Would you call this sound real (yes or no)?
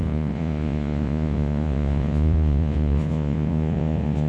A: no